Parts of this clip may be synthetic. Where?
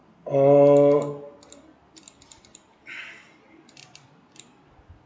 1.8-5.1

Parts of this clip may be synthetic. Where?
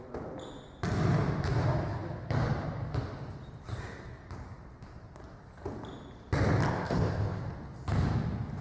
6.7-7.4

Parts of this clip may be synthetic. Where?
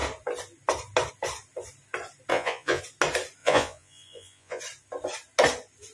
2.3-2.8; 3.4-4.6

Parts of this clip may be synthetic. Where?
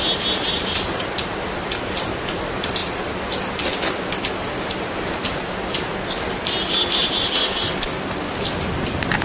none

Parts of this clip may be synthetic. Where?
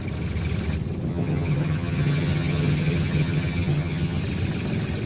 1.1-4.2